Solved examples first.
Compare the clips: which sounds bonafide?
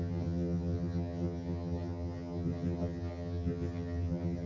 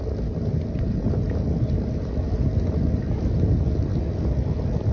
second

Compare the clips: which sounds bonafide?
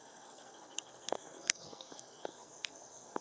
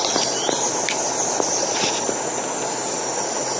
second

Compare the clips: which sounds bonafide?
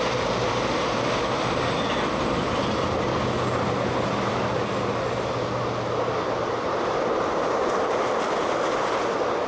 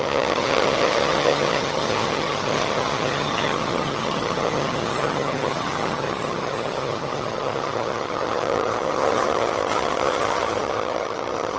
first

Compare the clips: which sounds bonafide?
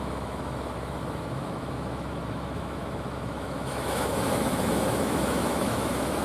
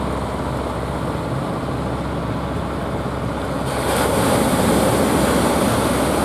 second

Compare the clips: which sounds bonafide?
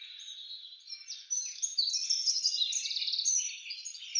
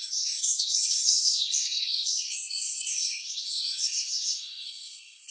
first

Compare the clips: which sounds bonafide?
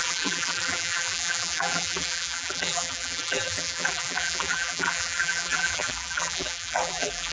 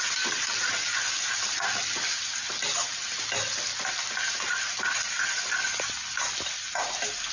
second